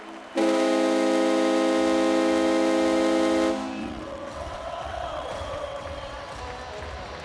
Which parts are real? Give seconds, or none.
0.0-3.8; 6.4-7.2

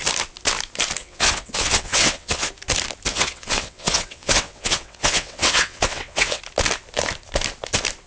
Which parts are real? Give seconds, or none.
0.0-1.0; 2.5-3.1; 6.4-8.1

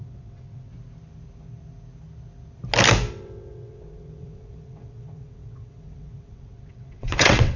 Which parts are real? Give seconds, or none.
0.7-3.1

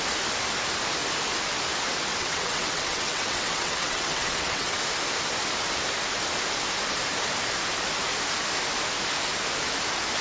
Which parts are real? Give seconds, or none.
0.0-2.1; 4.8-10.2

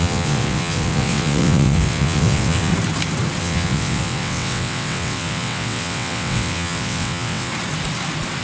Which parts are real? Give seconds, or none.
2.7-3.4; 7.5-8.4

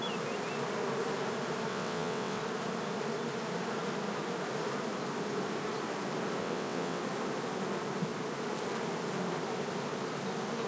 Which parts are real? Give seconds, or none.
0.0-1.7; 2.4-6.4; 7.0-10.7

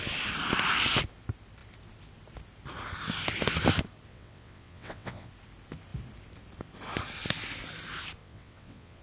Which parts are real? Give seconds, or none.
0.0-4.1; 5.3-8.2

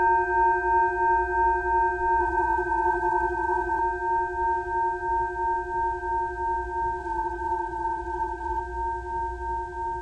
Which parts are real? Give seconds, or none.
0.0-2.2; 3.8-7.0; 8.6-10.0